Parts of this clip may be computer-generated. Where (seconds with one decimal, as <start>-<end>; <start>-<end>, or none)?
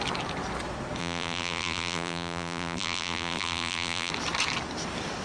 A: 1.0-4.1